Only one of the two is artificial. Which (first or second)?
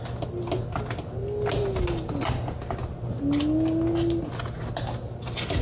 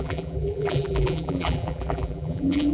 second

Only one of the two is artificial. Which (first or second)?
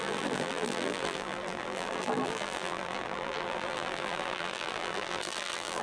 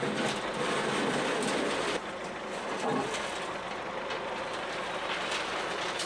first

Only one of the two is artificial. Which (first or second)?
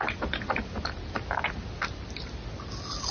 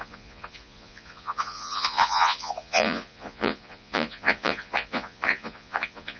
second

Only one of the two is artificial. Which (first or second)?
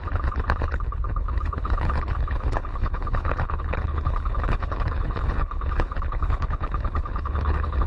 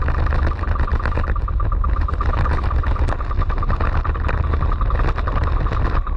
first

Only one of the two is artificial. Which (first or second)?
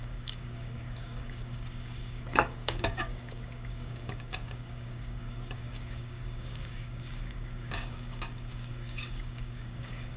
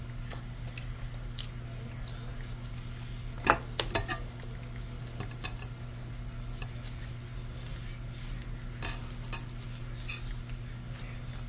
first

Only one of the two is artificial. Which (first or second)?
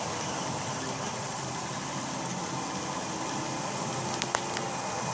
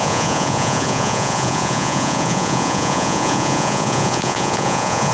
second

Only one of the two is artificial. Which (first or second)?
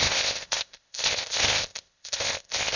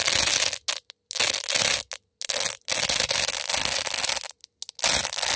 first